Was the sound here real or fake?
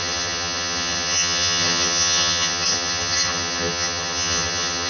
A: fake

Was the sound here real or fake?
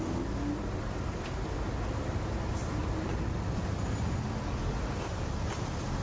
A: real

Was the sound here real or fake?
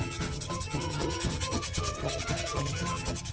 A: fake